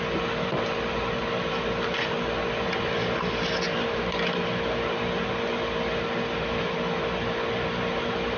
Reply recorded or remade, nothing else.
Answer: recorded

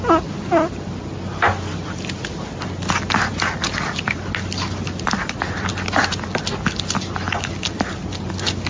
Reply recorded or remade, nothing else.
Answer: recorded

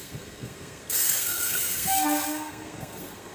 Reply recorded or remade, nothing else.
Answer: remade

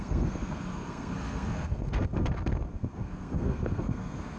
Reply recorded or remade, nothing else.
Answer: remade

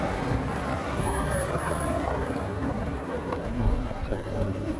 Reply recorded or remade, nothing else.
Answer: remade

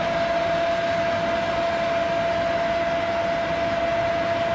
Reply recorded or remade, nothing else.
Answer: recorded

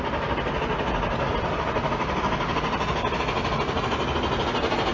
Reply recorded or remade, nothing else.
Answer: recorded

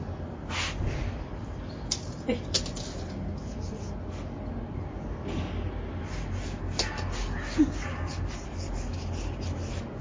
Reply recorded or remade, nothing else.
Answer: recorded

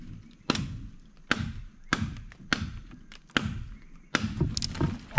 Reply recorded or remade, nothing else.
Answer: recorded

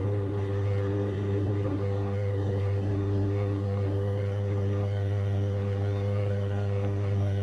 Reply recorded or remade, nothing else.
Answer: remade